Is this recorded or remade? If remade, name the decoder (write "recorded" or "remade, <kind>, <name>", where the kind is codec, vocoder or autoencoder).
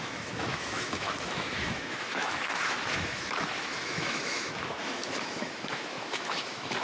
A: remade, autoencoder, DAC-VAE